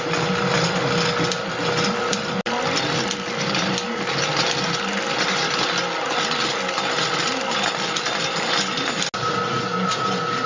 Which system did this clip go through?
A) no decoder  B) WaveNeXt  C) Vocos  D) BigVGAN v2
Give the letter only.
A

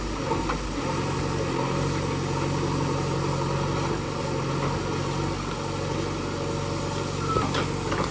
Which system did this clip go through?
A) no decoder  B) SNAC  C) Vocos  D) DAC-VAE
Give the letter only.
A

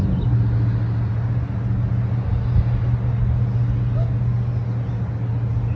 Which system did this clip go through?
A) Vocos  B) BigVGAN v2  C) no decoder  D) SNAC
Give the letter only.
C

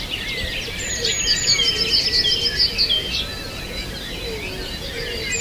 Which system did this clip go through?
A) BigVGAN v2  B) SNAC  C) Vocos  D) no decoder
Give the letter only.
D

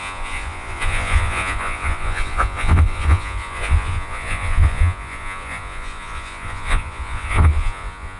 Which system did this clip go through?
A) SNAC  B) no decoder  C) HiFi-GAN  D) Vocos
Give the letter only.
D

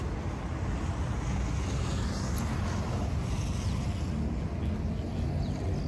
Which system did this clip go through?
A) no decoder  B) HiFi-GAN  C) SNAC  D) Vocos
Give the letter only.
A